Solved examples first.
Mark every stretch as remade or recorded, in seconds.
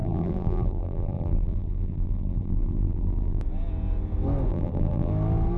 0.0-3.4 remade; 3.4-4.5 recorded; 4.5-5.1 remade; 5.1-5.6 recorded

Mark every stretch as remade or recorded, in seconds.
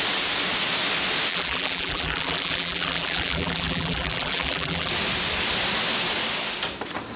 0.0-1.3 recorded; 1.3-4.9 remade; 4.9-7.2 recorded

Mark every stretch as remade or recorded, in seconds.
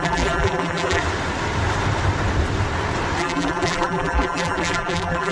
0.0-1.0 remade; 1.0-3.2 recorded; 3.2-5.3 remade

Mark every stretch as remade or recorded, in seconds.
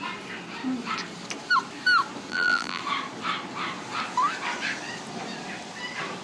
0.0-2.3 recorded; 2.3-2.8 remade; 2.8-6.2 recorded